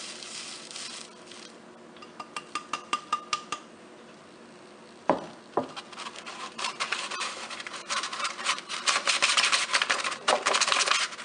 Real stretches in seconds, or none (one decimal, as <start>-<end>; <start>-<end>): 0.0-6.3; 10.3-11.2